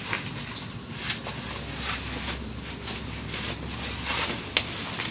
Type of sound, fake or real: real